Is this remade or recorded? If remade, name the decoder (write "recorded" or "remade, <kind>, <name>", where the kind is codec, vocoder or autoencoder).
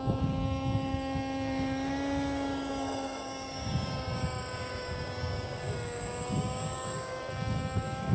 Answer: remade, codec, DAC